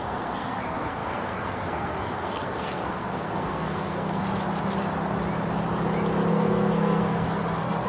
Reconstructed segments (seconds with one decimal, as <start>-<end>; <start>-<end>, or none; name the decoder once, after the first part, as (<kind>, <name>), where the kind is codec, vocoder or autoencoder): 0.0-4.2 (codec, SNAC); 6.3-7.9